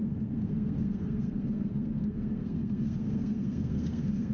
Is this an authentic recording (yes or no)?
no